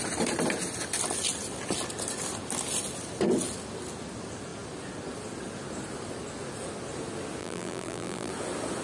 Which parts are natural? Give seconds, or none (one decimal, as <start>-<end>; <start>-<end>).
0.0-7.4; 8.3-8.8